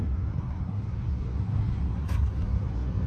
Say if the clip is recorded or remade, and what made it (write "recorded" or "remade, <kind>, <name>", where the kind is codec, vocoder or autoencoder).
remade, codec, SNAC